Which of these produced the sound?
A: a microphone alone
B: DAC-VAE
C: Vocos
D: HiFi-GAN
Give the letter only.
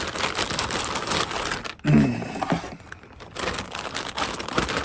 A